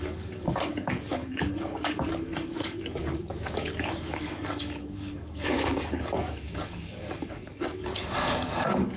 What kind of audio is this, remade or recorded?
remade